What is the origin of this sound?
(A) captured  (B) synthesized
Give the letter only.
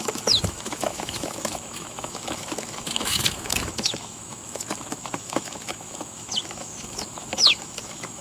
B